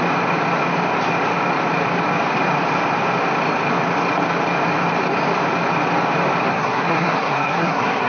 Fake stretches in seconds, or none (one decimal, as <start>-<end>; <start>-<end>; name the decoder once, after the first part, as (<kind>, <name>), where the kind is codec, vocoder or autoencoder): 6.5-8.1 (codec, SNAC)